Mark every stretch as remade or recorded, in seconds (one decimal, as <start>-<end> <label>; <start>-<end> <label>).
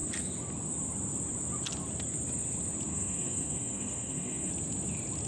0.0-2.9 recorded; 2.9-4.5 remade; 4.5-5.3 recorded